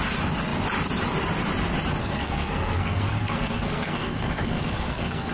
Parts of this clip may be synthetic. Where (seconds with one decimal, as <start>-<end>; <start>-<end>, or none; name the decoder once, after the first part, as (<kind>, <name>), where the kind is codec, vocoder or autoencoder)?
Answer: 2.0-5.3 (codec, SNAC)